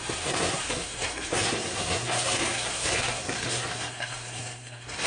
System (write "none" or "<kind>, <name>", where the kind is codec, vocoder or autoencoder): codec, SNAC